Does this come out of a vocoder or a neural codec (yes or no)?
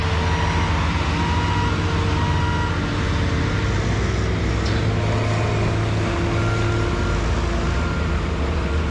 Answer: no